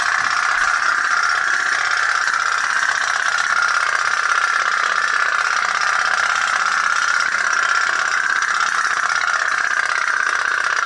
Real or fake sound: real